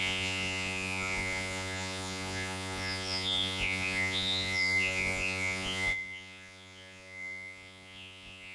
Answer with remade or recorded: remade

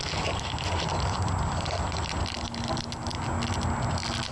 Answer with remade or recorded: recorded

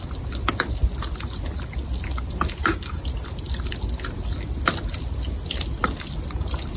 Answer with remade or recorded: recorded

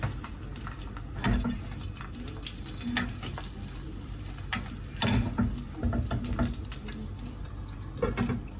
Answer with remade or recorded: recorded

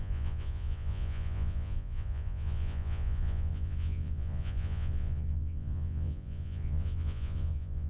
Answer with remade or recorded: remade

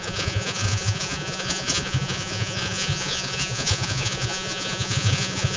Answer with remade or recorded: remade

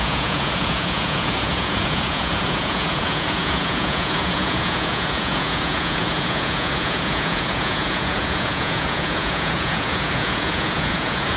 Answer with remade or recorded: remade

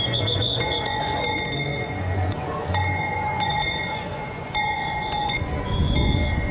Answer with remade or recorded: remade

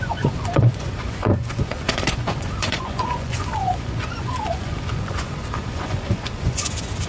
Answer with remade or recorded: remade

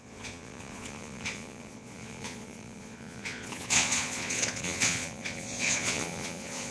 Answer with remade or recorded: remade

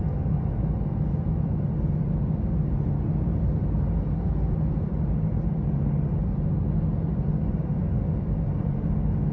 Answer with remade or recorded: recorded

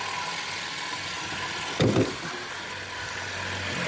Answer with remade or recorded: recorded